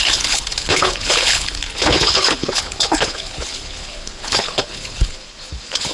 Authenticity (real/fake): fake